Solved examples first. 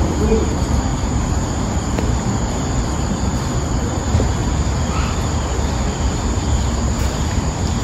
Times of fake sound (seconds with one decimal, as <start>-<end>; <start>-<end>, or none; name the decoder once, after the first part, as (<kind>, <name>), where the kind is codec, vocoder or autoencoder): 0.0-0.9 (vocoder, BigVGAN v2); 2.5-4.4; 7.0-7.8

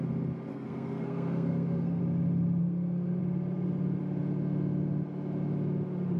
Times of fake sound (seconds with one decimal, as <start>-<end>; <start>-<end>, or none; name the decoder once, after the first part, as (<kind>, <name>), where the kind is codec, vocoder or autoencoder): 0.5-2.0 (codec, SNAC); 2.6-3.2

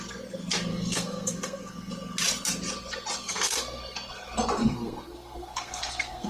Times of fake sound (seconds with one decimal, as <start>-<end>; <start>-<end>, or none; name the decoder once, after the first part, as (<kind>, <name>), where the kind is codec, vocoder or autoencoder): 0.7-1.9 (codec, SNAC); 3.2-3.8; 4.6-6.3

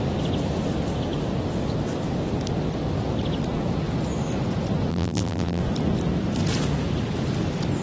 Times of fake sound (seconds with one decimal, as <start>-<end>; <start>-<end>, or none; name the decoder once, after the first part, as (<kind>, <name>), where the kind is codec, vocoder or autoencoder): 4.9-5.6 (vocoder, BigVGAN v2)